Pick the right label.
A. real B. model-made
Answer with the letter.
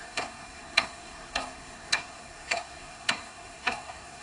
B